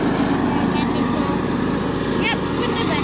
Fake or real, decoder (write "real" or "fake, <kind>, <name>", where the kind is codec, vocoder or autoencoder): real